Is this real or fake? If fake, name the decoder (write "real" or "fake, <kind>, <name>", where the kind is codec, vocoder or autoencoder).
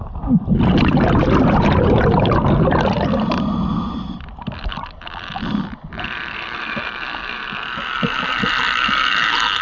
fake, vocoder, BigVGAN v2